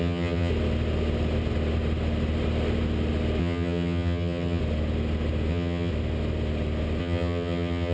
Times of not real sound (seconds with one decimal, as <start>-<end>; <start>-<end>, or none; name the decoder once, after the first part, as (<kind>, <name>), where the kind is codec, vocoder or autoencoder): 0.0-0.5 (vocoder, HiFi-GAN); 3.4-4.6; 5.5-5.9; 7.0-7.9